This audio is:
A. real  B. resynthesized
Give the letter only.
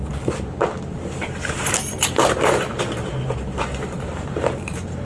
B